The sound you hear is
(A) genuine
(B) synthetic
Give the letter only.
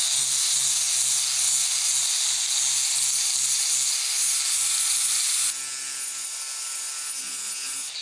A